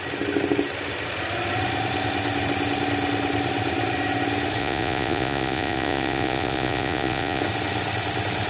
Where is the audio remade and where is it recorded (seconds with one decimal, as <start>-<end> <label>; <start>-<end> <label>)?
0.0-4.6 recorded; 4.6-7.4 remade; 7.4-8.5 recorded